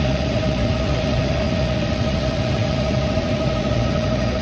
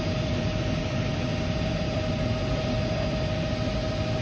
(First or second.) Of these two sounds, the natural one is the second